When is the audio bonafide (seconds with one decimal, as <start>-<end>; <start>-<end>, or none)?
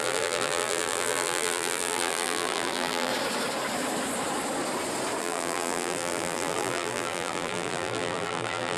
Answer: 3.1-5.2